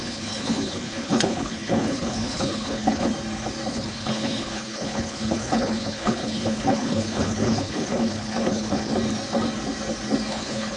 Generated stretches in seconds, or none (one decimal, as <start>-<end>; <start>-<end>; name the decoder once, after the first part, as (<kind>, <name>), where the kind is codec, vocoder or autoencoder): 0.0-3.1 (codec, HILCodec); 3.7-8.9; 10.3-10.8